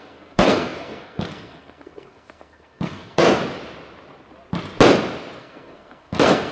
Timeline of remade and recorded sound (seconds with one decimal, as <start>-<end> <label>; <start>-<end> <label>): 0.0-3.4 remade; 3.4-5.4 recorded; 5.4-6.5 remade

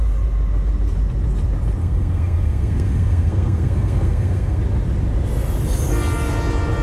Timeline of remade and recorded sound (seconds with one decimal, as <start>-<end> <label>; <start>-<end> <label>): 0.0-1.8 recorded; 1.8-4.6 remade; 4.6-6.8 recorded

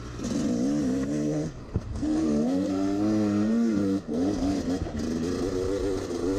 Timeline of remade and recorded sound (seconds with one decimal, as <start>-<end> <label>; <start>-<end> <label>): 0.0-0.8 recorded; 0.8-4.6 remade; 4.6-6.4 recorded

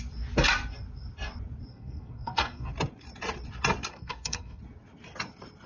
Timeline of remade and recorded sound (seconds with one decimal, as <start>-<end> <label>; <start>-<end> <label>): 0.0-1.7 recorded; 1.7-2.7 remade; 2.7-3.9 recorded; 3.9-4.6 remade; 4.6-5.7 recorded

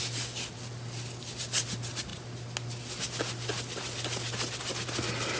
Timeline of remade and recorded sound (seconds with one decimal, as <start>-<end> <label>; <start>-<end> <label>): 0.0-5.4 recorded

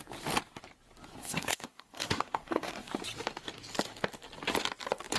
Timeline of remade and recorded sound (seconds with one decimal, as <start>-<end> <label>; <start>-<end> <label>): 0.0-1.2 recorded; 1.2-2.9 remade; 2.9-5.2 recorded